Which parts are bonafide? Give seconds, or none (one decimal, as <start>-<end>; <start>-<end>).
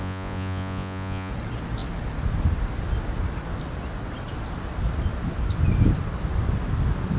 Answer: 1.3-7.2